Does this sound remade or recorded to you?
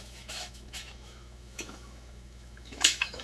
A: remade